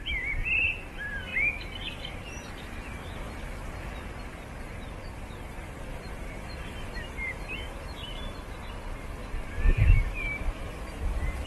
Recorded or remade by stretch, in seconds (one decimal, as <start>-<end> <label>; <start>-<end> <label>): 0.0-11.5 remade